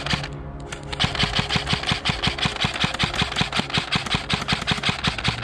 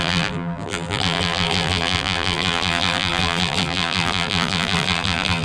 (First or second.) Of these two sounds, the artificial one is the second